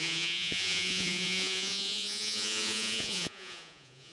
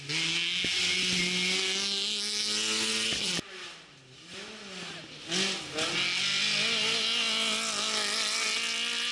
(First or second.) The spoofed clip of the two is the first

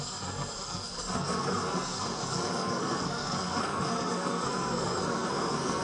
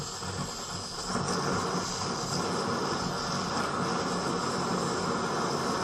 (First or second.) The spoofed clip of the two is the first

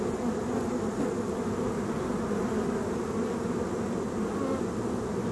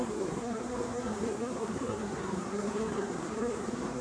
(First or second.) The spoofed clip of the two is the second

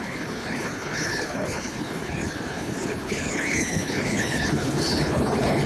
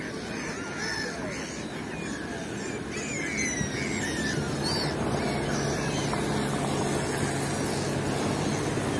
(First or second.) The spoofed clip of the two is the first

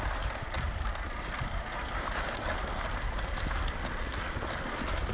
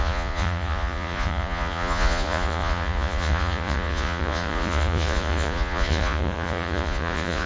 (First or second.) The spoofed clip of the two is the second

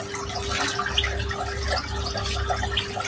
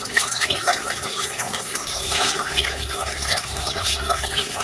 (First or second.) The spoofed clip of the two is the second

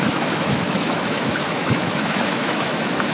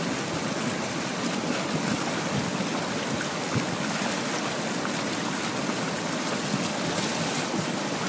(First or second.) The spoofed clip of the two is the first